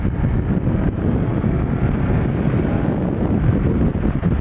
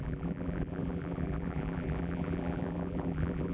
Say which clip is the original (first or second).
first